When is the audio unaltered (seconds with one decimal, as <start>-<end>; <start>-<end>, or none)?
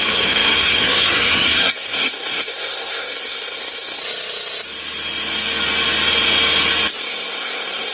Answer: 4.0-7.0